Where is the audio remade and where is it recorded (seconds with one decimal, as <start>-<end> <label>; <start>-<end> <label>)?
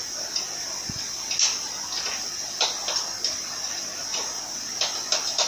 0.0-5.5 recorded